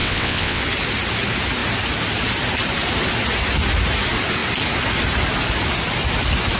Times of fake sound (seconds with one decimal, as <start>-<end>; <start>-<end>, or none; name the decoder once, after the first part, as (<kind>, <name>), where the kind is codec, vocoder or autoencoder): 0.0-0.6 (vocoder, WaveNeXt)